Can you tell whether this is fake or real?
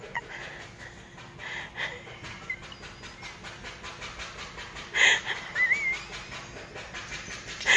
real